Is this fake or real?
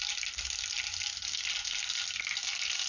real